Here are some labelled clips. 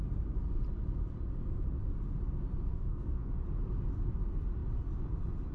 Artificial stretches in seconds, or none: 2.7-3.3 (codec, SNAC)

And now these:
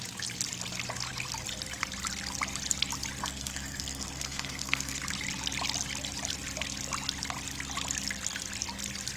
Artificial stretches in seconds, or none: 3.2-5.0 (codec, SNAC)

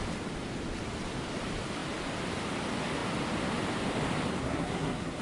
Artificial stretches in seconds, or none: 4.4-5.2 (codec, SNAC)